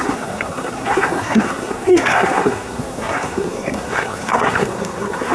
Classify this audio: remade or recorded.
remade